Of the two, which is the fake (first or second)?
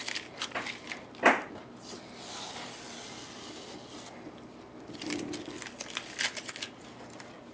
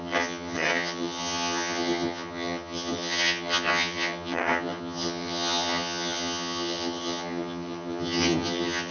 second